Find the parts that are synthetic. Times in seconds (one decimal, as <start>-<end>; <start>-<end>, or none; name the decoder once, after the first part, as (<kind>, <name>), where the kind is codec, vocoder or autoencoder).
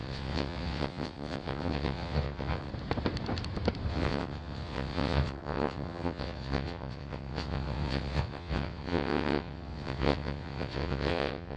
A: 0.0-2.7 (vocoder, WaveNeXt); 3.9-11.6